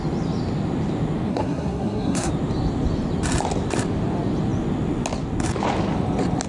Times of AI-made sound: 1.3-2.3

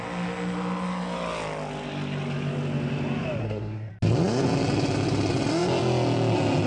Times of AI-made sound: 3.4-3.9